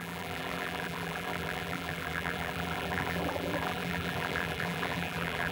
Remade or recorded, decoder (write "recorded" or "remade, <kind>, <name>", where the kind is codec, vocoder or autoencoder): remade, vocoder, BigVGAN v2